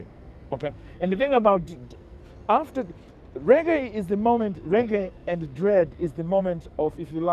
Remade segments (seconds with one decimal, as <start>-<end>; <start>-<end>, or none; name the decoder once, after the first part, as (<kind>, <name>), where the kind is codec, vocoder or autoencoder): 0.0-2.2 (codec, SNAC); 4.4-7.3